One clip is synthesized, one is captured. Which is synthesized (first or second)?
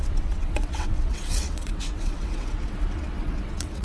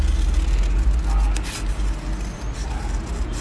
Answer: first